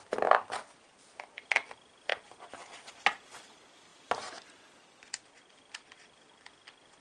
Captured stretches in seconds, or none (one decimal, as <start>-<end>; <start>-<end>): 0.0-3.9; 5.3-7.0